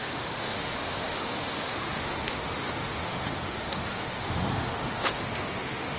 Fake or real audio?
fake